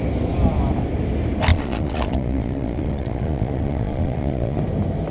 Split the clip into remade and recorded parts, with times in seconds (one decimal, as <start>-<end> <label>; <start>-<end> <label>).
0.0-1.5 recorded; 1.5-4.6 remade; 4.6-5.1 recorded